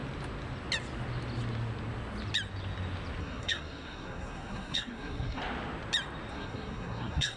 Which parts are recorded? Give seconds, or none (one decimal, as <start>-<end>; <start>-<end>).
0.0-3.2; 5.4-6.3